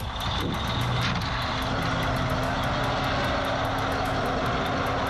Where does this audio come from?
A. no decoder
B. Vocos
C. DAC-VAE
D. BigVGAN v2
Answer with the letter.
A